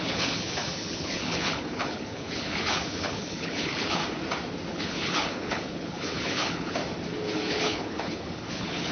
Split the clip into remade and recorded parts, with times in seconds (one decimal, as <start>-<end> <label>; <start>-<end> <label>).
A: 0.0-4.0 remade; 4.0-4.7 recorded; 4.7-6.8 remade; 6.8-7.3 recorded; 7.3-8.9 remade